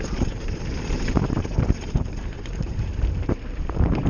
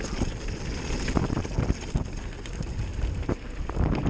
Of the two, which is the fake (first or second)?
first